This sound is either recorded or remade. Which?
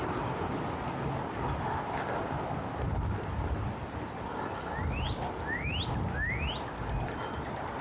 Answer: recorded